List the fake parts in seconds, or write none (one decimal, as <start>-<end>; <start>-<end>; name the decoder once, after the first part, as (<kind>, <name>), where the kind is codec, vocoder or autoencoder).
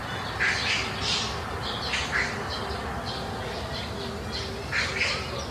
none